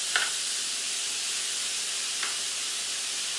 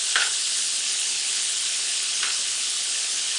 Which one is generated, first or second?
second